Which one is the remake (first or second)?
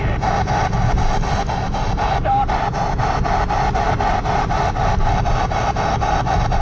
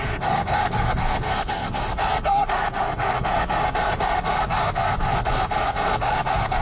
second